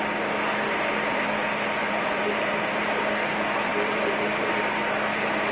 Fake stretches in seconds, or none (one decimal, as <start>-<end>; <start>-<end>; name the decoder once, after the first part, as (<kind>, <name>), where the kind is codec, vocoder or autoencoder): 1.8-2.5 (vocoder, BigVGAN v2)

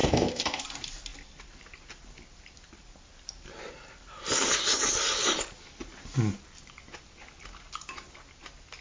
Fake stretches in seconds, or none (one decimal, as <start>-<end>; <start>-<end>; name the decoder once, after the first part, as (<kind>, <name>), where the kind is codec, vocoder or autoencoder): 0.0-0.6 (codec, ZipCodec)

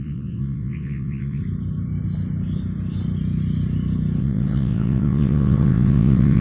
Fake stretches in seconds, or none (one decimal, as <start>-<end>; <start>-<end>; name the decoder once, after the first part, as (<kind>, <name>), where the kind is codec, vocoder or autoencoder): 0.0-1.4 (vocoder, WaveNeXt); 4.2-6.4